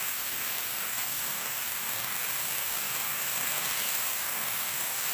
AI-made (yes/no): yes